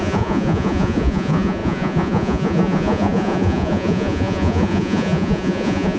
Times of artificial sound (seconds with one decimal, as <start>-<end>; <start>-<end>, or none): 0.0-6.0